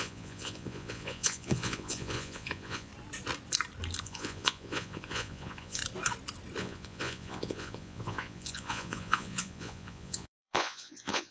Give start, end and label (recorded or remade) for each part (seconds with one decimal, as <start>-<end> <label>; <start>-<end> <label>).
0.0-2.9 remade; 2.9-4.0 recorded; 4.0-5.8 remade; 5.8-6.6 recorded; 6.6-11.3 remade